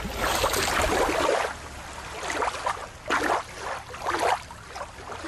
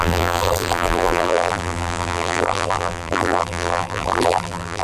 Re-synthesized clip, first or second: second